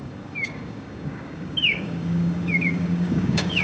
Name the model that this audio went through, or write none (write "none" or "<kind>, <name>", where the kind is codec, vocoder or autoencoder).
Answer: codec, DAC